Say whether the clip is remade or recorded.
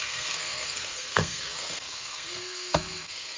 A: remade